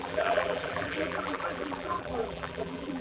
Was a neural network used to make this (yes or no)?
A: yes